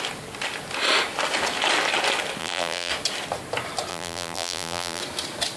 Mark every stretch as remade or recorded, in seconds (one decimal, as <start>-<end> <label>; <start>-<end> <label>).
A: 0.0-2.4 recorded; 2.4-2.9 remade; 2.9-3.9 recorded; 3.9-5.0 remade; 5.0-5.6 recorded

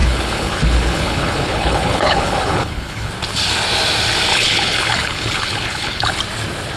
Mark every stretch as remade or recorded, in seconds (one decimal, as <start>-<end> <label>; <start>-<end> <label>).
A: 0.0-3.1 remade; 3.1-4.3 recorded; 4.3-6.1 remade; 6.1-6.8 recorded

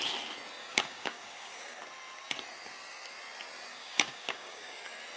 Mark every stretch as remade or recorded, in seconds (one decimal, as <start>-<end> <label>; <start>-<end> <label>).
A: 0.0-0.6 recorded; 0.6-1.8 remade; 1.8-3.7 recorded; 3.7-4.8 remade; 4.8-5.2 recorded

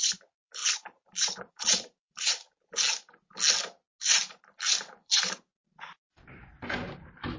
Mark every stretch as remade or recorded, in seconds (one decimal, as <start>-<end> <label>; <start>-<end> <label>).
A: 0.0-2.8 remade; 2.8-4.0 recorded; 4.0-5.6 remade; 5.6-7.4 recorded

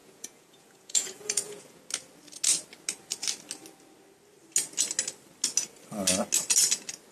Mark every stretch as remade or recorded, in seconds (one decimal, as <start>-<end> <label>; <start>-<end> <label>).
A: 0.0-1.8 remade; 1.8-7.1 recorded

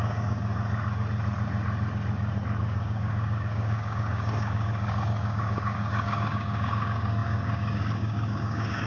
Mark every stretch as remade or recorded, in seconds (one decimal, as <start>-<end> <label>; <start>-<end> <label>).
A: 0.0-0.5 remade; 0.5-2.6 recorded; 2.6-8.9 remade

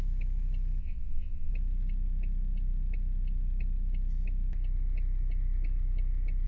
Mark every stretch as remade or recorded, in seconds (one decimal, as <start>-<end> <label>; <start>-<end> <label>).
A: 0.0-0.8 recorded; 0.8-1.5 remade; 1.5-6.5 recorded

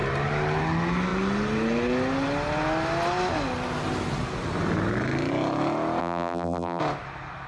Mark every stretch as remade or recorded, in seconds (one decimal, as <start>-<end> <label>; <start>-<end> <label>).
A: 0.0-6.0 recorded; 6.0-6.8 remade; 6.8-7.5 recorded